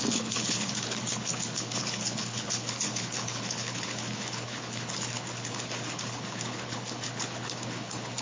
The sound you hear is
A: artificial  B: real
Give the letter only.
A